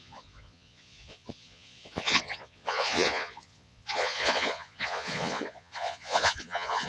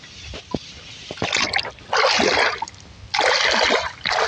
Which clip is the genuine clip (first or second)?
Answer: second